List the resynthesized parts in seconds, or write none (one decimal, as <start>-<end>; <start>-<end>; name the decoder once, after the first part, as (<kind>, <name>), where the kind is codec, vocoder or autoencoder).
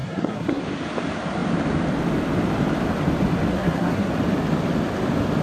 0.0-0.6 (codec, SNAC); 3.5-4.1